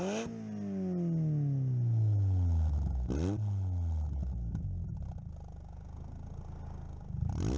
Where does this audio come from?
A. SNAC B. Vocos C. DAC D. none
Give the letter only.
D